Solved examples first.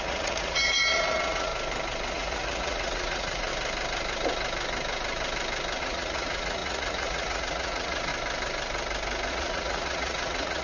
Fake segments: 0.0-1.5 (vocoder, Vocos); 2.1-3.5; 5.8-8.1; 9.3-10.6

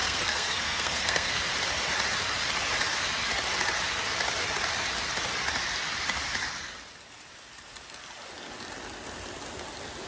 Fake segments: 0.0-1.4 (codec, SNAC)